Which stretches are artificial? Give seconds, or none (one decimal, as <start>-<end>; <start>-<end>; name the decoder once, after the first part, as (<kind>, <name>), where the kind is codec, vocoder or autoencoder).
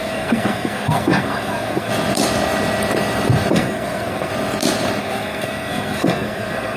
0.0-1.9 (codec, SNAC); 3.5-4.3; 5.0-6.8